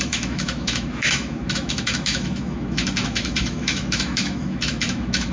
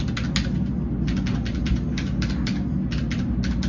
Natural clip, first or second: second